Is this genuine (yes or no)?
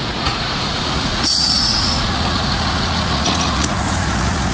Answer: no